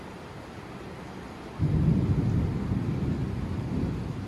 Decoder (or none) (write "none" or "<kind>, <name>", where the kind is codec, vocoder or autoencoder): vocoder, BigVGAN v2